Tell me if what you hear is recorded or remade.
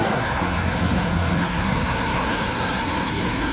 remade